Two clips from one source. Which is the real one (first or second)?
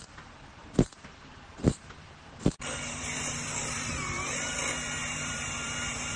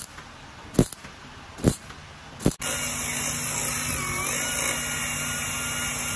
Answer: second